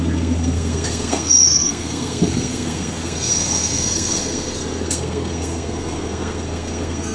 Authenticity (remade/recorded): remade